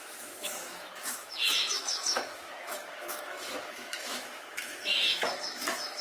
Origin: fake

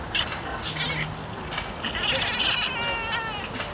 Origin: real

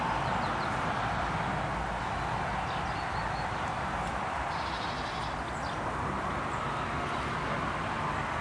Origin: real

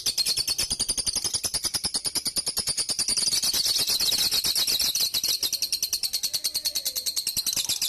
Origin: real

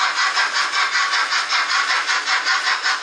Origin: real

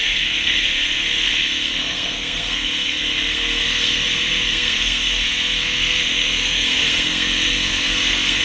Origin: fake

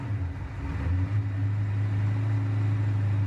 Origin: real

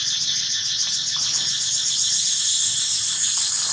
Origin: real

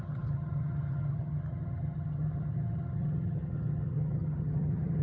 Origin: fake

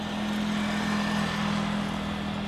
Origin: real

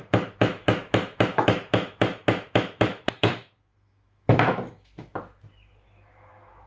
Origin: fake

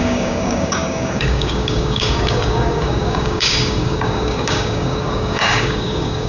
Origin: fake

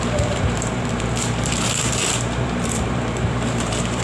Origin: fake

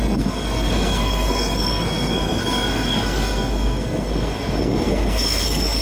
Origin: fake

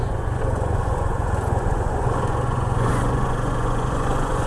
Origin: fake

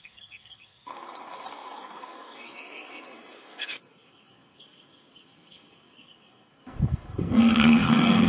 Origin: fake